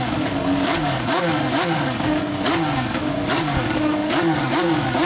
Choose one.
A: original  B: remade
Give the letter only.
B